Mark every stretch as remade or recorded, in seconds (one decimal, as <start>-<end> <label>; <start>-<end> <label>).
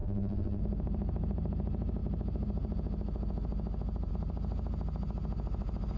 0.0-0.6 remade; 0.6-6.0 recorded